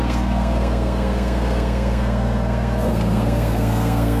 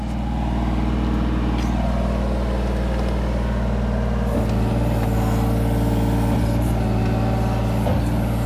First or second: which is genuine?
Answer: second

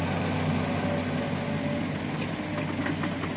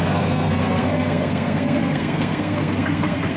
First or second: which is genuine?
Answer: first